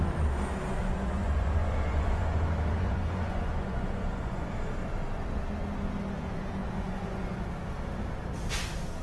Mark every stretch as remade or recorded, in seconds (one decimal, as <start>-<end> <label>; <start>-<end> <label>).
0.0-0.8 recorded; 0.8-4.5 remade; 4.5-6.6 recorded; 6.6-7.5 remade; 7.5-9.0 recorded